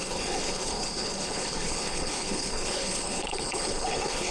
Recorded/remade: remade